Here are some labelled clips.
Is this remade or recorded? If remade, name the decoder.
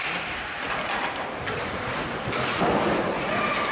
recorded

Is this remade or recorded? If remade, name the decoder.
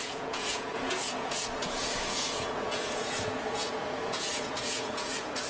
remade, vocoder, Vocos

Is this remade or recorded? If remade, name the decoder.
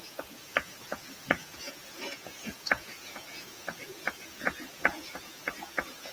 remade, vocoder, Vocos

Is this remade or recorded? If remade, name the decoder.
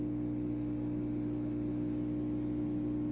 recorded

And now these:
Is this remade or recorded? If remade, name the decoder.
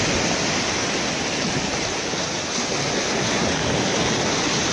recorded